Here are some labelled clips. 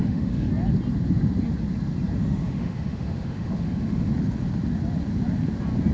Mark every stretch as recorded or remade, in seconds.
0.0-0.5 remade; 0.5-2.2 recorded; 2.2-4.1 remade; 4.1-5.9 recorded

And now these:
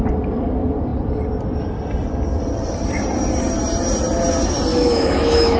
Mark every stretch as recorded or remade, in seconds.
0.0-4.7 recorded; 4.7-5.6 remade

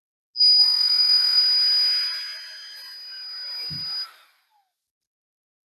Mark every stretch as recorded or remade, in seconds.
0.0-0.6 recorded; 0.6-1.4 remade; 1.4-5.6 recorded